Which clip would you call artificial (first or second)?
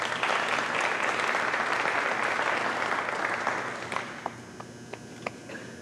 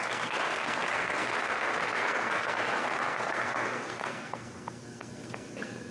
second